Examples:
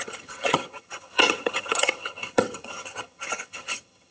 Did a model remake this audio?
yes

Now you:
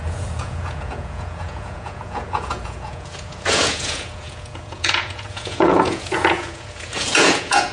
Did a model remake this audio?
yes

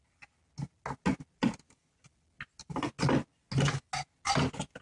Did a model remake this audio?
no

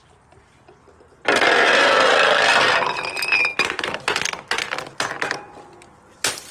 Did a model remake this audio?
no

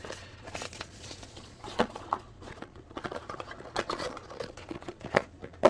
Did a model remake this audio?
yes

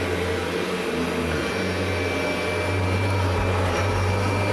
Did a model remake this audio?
no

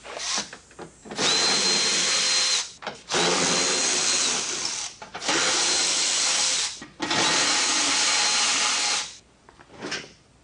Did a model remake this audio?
no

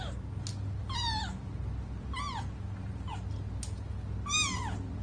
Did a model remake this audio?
no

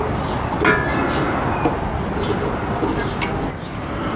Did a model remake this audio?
no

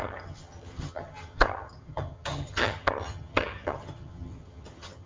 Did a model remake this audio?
yes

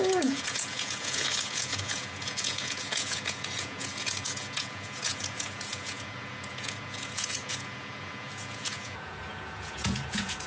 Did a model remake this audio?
yes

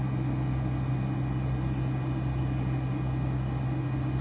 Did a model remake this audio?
no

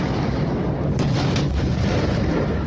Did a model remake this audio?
no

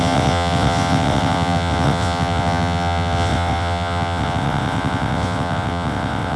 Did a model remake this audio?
yes